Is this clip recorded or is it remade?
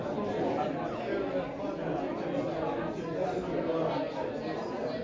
recorded